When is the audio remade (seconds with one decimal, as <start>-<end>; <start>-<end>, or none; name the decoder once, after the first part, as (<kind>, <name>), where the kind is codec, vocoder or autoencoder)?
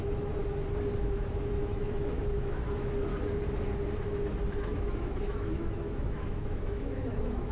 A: 0.0-0.4 (autoencoder, DAC-VAE); 1.0-3.1; 4.6-7.5